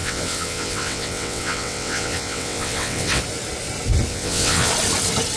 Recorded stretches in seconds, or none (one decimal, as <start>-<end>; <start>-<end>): 3.2-4.1; 4.7-5.4